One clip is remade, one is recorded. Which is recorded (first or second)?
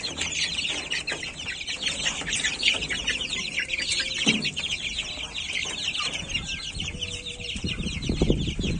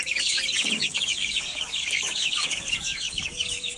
first